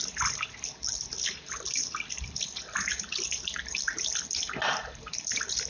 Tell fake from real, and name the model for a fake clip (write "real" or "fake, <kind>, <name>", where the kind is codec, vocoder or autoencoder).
fake, vocoder, BigVGAN v2